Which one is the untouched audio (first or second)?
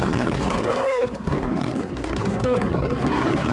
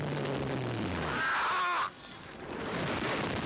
second